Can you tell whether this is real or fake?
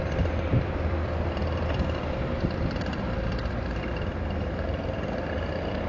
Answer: fake